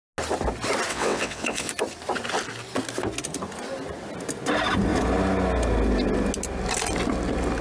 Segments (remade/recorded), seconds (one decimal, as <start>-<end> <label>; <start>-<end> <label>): 0.0-0.9 recorded; 0.9-1.7 remade; 1.7-7.6 recorded